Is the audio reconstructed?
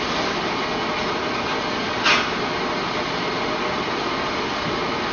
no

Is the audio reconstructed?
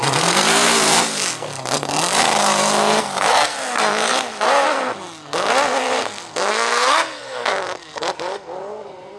yes